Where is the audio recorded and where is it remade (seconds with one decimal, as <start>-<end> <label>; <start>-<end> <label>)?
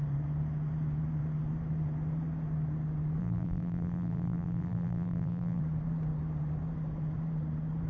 0.0-3.2 recorded; 3.2-5.6 remade; 5.6-7.9 recorded